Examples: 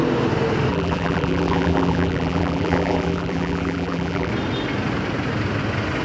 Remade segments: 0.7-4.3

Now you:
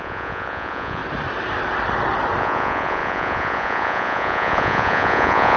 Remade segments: 0.0-1.0; 2.4-5.6

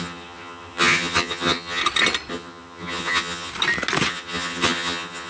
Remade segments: 0.0-1.8; 2.3-3.5; 4.1-5.3

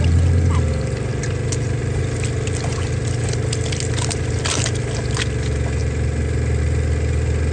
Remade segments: none

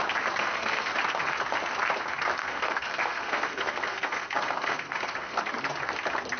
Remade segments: 0.4-0.9; 2.4-5.4

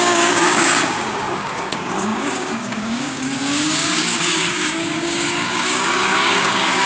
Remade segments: 0.0-6.9

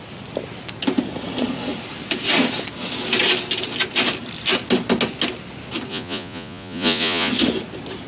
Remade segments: 5.9-7.3

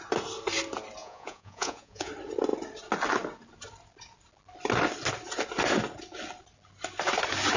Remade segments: 1.0-2.1